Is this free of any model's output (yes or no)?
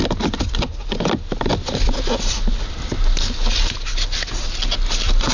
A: yes